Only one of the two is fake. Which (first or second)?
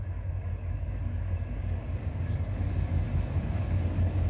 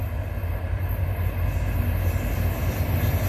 first